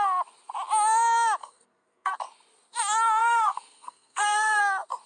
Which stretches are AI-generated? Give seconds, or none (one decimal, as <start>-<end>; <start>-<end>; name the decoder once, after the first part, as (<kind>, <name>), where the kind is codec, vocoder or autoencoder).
1.4-2.1 (codec, SNAC); 3.2-4.6